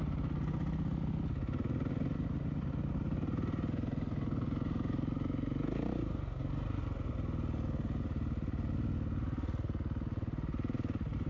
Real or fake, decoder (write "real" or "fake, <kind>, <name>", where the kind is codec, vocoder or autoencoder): real